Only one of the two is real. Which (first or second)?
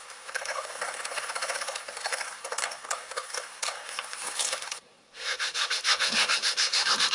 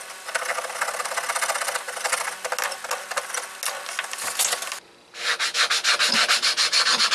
second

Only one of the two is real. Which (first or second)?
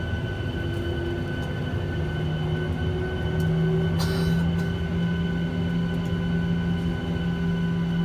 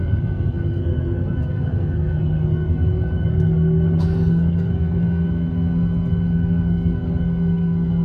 first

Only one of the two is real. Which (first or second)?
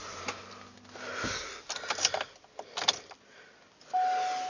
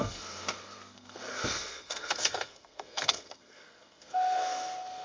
first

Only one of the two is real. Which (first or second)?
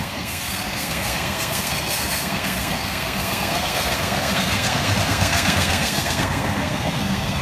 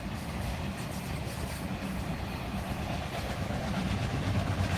second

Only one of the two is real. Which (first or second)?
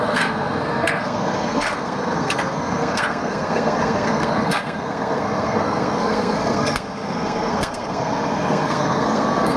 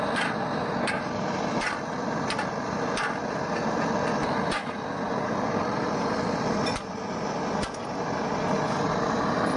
second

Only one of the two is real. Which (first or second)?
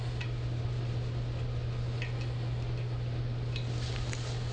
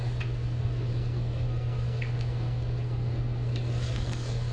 first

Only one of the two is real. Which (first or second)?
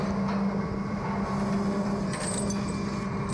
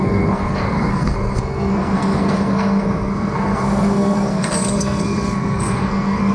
first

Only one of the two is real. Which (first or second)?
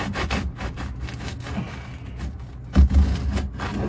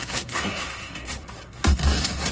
first